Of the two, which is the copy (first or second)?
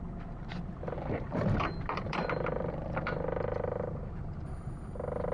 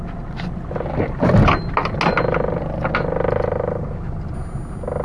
first